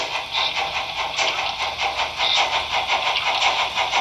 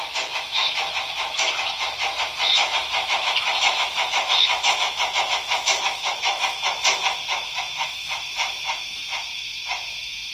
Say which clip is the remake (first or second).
second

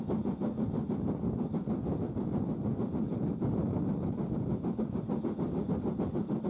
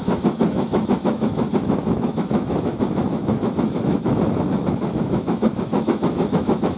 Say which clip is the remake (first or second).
second